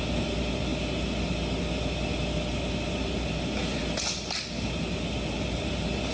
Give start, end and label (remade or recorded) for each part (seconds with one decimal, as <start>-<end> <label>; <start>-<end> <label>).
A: 0.0-6.1 recorded

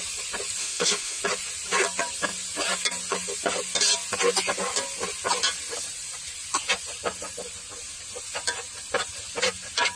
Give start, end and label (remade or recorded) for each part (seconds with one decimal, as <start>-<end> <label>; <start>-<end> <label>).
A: 0.0-0.6 recorded; 0.6-1.2 remade; 1.2-10.0 recorded

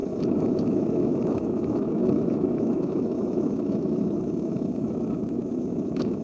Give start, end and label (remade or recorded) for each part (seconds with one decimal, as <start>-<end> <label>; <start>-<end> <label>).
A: 0.0-6.2 remade